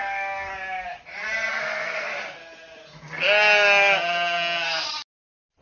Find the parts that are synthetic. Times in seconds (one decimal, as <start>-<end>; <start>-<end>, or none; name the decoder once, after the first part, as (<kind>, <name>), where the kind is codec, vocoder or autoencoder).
0.0-0.5 (codec, SNAC); 1.5-2.1